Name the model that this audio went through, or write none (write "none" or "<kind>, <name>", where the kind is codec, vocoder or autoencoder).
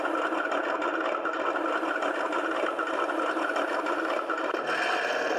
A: none